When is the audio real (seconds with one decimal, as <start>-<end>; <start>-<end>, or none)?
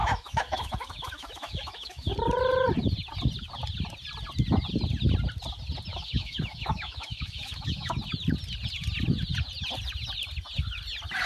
2.1-5.9; 7.9-11.3